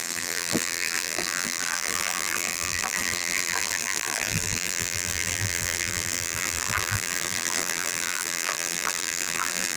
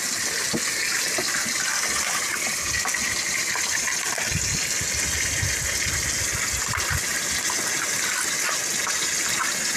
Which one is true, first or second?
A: second